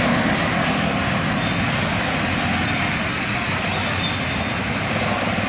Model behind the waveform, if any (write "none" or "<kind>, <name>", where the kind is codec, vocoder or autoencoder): none